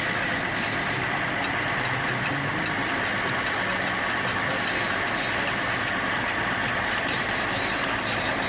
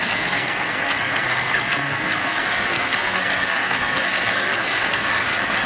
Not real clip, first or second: second